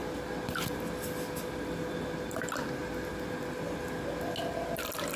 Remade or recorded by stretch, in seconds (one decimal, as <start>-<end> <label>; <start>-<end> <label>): 0.0-5.2 recorded